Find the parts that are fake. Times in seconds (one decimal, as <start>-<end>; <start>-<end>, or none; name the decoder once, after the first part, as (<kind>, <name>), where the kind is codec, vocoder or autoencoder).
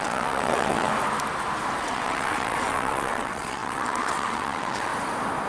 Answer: 0.0-0.9 (vocoder, WaveNeXt); 1.8-4.9